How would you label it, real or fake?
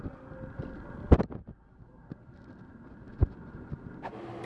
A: real